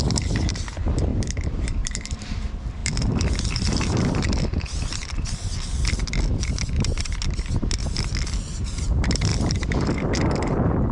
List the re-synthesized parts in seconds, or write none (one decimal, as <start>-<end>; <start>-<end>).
1.1-2.4